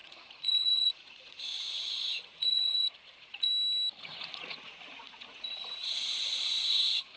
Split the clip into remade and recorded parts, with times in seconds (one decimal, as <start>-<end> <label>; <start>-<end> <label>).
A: 0.0-3.5 remade; 3.5-4.0 recorded; 4.0-7.2 remade